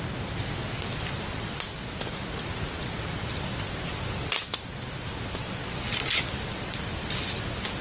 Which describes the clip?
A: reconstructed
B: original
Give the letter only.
B